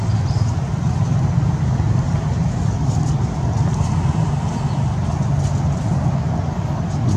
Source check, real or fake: real